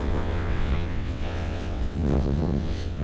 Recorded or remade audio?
remade